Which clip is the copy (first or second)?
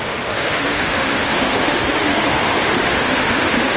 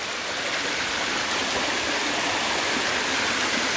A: first